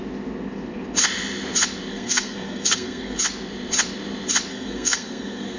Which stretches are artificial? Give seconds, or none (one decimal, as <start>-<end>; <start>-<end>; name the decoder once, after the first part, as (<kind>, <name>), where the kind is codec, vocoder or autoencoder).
1.9-3.2 (codec, SNAC); 4.5-5.6

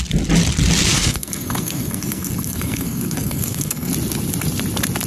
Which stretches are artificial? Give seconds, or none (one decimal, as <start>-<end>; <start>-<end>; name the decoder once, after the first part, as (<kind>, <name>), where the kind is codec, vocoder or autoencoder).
0.9-3.9 (codec, SNAC)

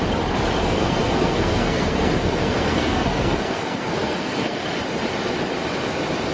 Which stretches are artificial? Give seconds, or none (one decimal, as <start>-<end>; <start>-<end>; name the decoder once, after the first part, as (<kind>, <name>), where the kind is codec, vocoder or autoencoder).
0.6-4.6 (codec, SNAC)

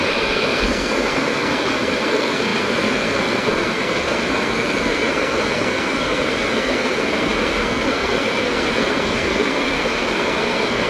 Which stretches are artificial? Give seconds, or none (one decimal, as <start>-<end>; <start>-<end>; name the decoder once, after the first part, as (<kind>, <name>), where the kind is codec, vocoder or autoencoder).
0.0-10.9 (codec, SNAC)

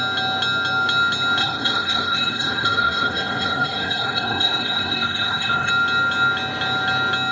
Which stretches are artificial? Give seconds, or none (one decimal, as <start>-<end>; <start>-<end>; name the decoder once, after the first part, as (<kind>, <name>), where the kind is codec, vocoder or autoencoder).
1.4-5.7 (codec, SNAC)

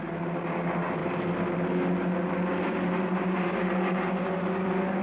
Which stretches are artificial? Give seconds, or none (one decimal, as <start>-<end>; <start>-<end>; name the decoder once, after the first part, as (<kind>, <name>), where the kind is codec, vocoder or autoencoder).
none

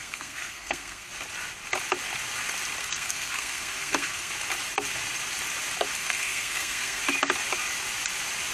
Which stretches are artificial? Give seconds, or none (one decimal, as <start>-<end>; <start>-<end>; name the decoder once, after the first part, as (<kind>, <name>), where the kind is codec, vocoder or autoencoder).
0.0-1.1 (codec, SNAC); 2.8-4.3; 6.0-7.0